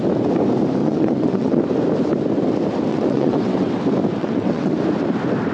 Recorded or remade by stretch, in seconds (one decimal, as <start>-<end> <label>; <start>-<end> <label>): 0.0-0.8 recorded; 0.8-1.6 remade; 1.6-2.9 recorded; 2.9-3.7 remade; 3.7-4.2 recorded; 4.2-4.8 remade; 4.8-5.5 recorded